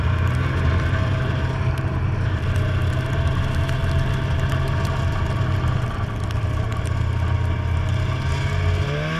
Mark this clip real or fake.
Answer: real